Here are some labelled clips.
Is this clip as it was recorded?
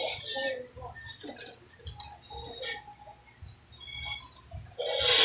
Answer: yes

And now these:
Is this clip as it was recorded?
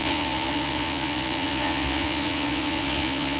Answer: no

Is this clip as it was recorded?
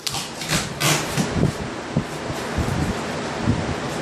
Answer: yes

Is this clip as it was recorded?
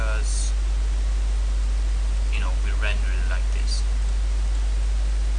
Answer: yes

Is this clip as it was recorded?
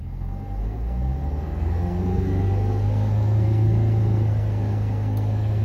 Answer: no